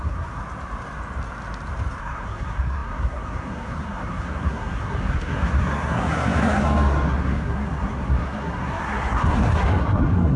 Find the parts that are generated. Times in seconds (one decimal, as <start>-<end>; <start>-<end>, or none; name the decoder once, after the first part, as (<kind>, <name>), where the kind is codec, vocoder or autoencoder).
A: 0.0-0.4 (codec, SNAC); 2.0-10.4